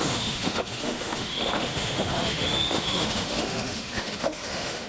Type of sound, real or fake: fake